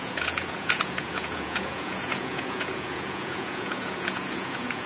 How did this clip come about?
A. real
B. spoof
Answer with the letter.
B